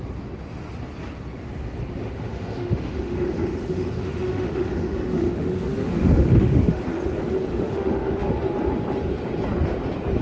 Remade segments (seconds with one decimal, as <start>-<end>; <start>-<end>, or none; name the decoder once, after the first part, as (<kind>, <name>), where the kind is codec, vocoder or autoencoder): 2.0-6.8 (autoencoder, DAC-VAE); 7.5-8.3